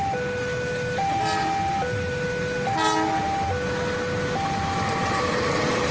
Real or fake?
real